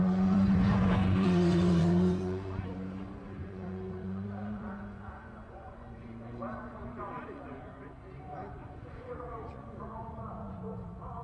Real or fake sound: fake